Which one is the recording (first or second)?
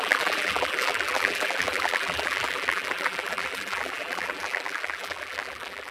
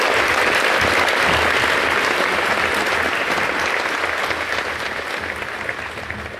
second